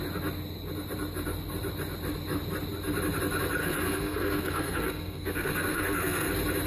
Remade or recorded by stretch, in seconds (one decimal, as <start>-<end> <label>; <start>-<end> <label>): 0.0-3.6 recorded; 3.6-6.3 remade; 6.3-6.7 recorded